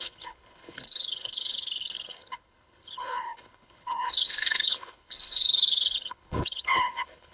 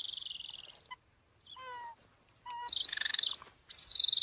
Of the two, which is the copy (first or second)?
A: first